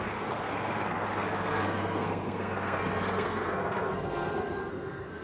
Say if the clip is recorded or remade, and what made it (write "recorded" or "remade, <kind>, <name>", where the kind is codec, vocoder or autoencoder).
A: remade, codec, SNAC